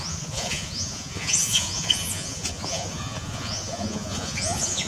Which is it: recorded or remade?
remade